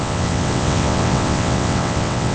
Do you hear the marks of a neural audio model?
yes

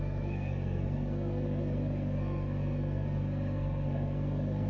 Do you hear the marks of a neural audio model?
yes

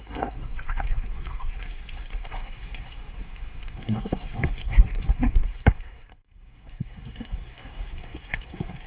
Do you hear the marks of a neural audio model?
yes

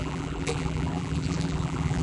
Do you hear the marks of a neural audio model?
yes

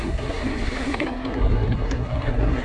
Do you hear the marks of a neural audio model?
yes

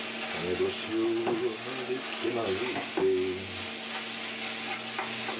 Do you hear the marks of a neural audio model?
no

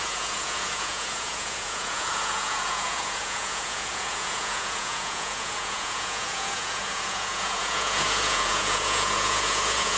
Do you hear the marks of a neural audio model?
yes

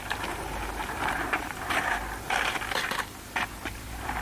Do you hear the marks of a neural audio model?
yes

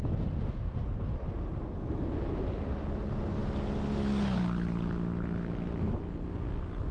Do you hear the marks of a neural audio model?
no